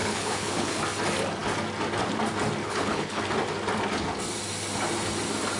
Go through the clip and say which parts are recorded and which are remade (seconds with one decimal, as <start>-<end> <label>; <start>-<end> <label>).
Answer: 0.0-0.8 remade; 0.8-2.6 recorded; 2.6-3.2 remade; 3.2-5.6 recorded